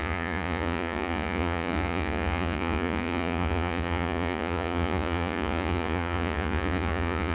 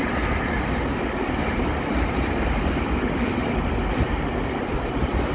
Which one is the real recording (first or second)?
second